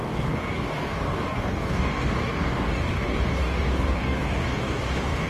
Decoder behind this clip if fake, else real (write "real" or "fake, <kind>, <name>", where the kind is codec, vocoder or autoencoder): fake, codec, DAC